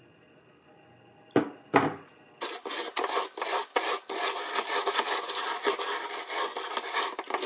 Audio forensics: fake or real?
real